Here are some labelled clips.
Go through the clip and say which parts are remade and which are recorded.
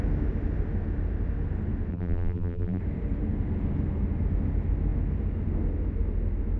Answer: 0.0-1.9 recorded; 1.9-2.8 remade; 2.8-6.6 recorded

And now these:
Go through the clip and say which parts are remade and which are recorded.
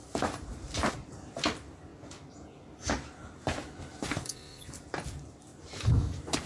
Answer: 0.0-0.9 recorded; 0.9-5.5 remade; 5.5-6.5 recorded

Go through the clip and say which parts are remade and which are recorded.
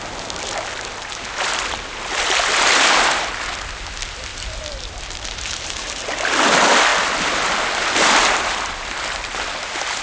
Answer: 0.0-4.3 recorded; 4.3-6.0 remade; 6.0-10.0 recorded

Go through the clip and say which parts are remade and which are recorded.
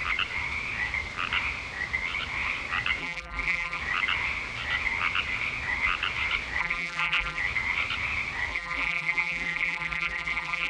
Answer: 0.0-3.0 recorded; 3.0-3.8 remade; 3.8-6.6 recorded; 6.6-7.4 remade; 7.4-8.5 recorded; 8.5-10.7 remade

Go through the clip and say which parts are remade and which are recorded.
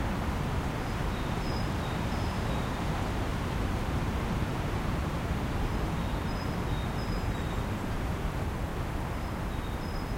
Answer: 0.0-8.7 remade; 8.7-10.2 recorded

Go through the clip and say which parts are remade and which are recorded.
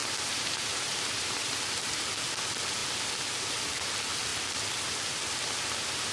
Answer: 0.0-2.1 remade; 2.1-6.1 recorded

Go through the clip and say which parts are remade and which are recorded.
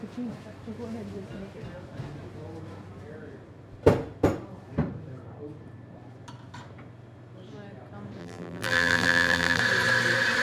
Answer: 0.0-8.2 recorded; 8.2-9.6 remade; 9.6-10.4 recorded